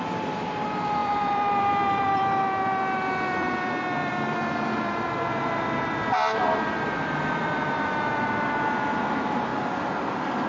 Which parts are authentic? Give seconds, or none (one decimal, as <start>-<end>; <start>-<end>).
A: 9.5-10.5